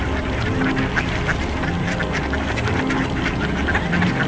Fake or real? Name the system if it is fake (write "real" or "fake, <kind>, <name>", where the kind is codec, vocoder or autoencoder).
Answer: real